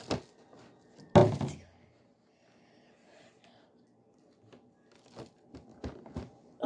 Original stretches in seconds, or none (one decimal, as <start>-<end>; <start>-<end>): 0.0-6.7